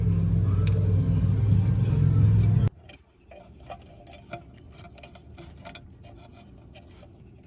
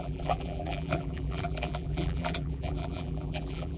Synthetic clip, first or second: second